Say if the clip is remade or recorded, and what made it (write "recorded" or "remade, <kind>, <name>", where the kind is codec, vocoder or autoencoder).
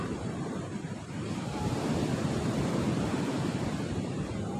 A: remade, vocoder, BigVGAN v2